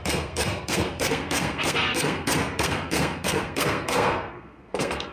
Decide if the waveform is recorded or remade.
remade